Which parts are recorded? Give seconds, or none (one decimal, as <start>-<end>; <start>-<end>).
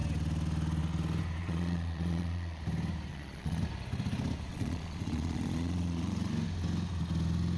0.0-1.4; 2.6-3.1; 3.6-4.5; 6.3-7.6